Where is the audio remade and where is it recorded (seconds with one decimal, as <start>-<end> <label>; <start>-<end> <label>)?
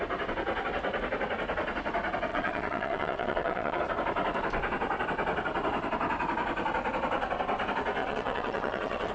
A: 0.0-2.3 recorded; 2.3-3.8 remade; 3.8-8.0 recorded; 8.0-9.1 remade